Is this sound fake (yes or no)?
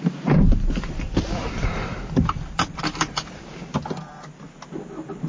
no